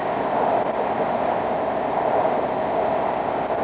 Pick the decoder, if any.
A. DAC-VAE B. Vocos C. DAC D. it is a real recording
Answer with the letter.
D